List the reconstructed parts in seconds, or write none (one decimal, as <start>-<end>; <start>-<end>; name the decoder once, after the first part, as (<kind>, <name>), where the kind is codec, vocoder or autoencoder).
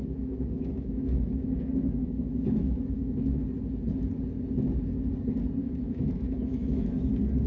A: 0.0-3.4 (autoencoder, DAC-VAE); 5.6-6.9